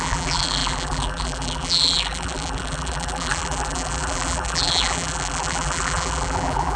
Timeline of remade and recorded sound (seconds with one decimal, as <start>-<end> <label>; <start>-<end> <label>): 0.0-6.8 remade